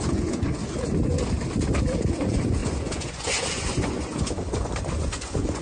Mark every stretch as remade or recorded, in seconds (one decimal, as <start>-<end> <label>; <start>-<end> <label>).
0.0-0.6 remade; 0.6-2.1 recorded; 2.1-5.6 remade